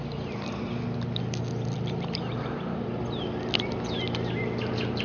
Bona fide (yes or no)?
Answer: yes